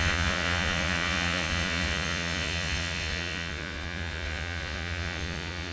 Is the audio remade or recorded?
remade